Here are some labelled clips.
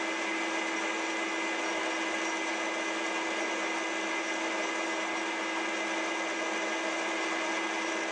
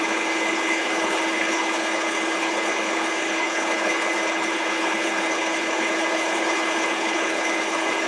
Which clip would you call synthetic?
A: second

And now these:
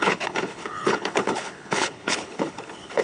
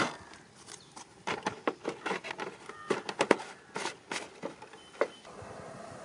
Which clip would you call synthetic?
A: first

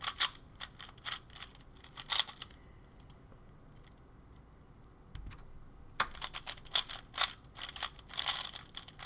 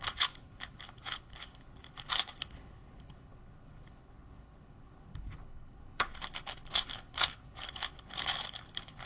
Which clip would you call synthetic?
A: second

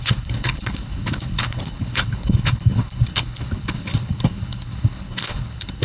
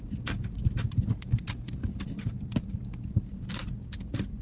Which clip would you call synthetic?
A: first